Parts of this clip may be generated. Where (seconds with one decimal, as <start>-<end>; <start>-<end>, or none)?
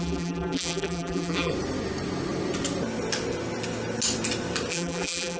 0.0-1.5; 4.7-5.4